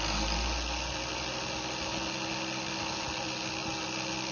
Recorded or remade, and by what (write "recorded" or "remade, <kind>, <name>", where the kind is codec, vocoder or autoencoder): recorded